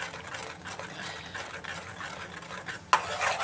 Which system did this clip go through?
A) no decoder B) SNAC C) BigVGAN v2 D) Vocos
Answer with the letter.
A